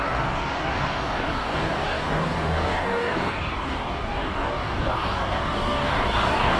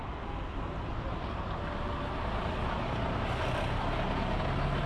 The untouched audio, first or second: second